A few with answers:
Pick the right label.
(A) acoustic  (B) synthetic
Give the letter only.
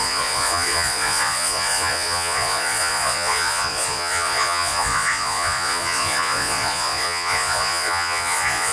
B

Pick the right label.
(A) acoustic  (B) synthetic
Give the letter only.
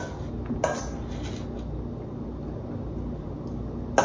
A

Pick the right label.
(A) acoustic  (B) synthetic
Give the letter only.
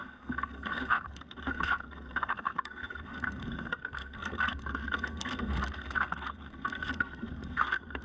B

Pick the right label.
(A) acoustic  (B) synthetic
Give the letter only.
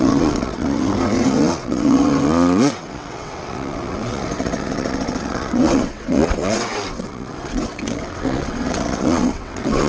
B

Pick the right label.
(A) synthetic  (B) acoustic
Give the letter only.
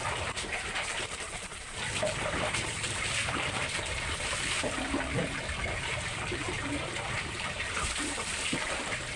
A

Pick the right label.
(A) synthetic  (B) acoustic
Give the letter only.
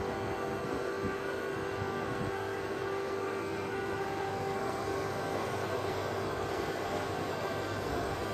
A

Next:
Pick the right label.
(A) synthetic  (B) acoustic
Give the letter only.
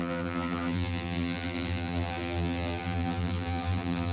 A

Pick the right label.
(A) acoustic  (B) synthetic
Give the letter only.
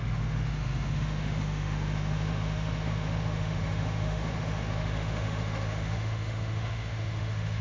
B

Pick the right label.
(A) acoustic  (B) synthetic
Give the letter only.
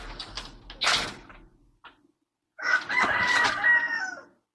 A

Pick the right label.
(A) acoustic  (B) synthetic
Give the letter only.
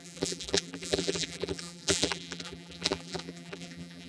B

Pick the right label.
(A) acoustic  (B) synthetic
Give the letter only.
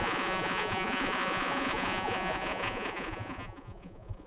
B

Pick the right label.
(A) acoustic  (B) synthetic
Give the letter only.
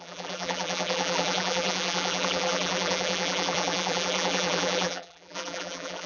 B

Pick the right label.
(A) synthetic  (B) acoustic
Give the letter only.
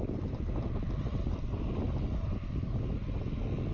B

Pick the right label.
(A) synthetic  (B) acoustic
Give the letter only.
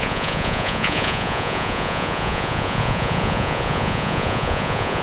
A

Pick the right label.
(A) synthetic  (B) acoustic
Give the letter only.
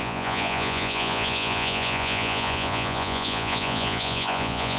A